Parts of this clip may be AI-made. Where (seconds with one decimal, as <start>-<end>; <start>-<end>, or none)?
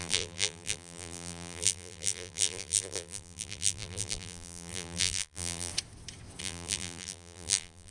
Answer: 0.0-5.7; 6.4-7.9